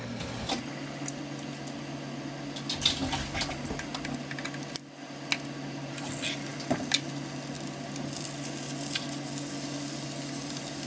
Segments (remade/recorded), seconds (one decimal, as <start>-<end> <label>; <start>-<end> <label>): 0.0-10.9 recorded